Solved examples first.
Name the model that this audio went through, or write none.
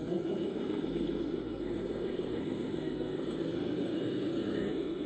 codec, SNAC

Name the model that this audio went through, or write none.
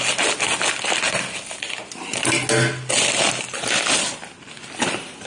none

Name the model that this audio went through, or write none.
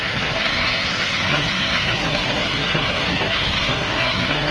codec, SNAC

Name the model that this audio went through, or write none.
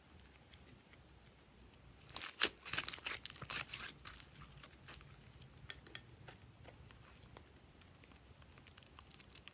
none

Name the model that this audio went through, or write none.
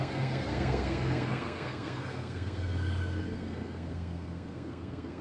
codec, SNAC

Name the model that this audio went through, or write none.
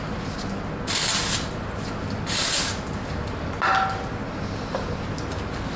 none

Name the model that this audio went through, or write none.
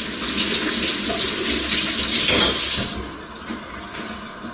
none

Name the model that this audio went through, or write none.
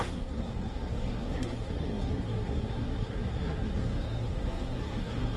codec, SNAC